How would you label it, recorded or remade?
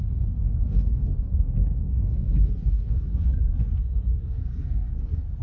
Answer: remade